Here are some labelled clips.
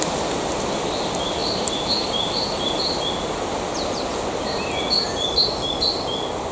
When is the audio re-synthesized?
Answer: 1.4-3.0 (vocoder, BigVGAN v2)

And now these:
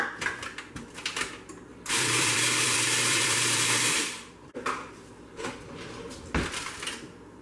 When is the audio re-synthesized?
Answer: 1.7-6.1 (vocoder, BigVGAN v2)

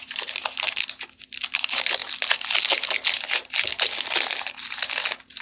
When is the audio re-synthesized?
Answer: none

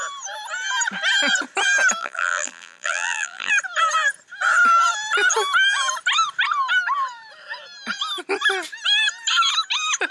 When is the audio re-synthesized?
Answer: 2.0-3.5 (vocoder, BigVGAN v2)

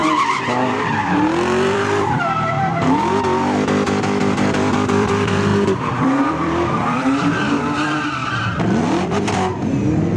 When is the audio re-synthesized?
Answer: 0.0-2.7 (vocoder, BigVGAN v2); 4.2-8.2; 9.0-10.2

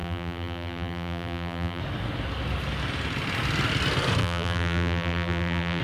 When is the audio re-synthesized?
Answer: 0.0-1.8 (vocoder, BigVGAN v2); 4.2-5.8